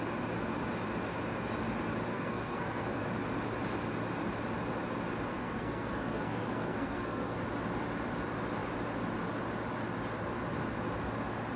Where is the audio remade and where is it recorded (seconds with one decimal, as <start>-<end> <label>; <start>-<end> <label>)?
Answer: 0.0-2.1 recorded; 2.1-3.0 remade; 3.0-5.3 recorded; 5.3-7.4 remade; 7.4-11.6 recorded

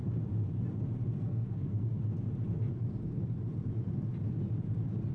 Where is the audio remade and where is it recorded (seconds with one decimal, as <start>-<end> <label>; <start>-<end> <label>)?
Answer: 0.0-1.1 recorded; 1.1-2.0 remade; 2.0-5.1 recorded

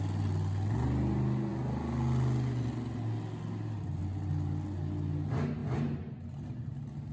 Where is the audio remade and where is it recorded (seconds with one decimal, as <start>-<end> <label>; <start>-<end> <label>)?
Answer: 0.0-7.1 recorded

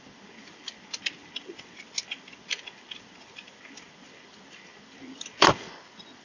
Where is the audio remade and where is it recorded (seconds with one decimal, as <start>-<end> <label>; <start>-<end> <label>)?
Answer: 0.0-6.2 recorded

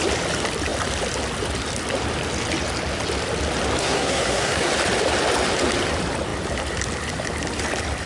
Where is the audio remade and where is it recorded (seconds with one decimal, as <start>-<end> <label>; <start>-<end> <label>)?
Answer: 0.0-3.8 recorded; 3.8-4.7 remade; 4.7-8.1 recorded

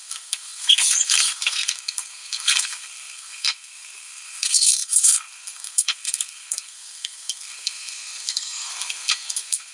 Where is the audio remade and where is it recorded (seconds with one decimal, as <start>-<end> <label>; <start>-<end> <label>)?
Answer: 0.0-9.7 remade